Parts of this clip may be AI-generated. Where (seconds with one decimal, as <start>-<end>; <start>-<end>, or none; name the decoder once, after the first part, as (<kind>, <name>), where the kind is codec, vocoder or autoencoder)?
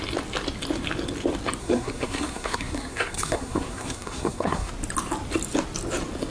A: 1.6-4.7 (codec, SNAC)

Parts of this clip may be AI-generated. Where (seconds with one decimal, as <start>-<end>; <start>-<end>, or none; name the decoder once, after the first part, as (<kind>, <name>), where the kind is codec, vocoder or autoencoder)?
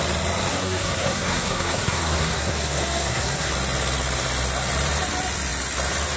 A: 0.5-3.5 (codec, SNAC)